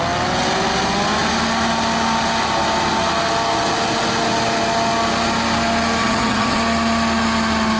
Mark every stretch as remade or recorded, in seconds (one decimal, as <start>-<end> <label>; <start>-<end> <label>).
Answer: 0.0-6.0 recorded; 6.0-6.6 remade; 6.6-7.8 recorded